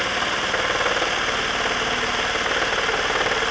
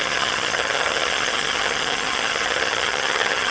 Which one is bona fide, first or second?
first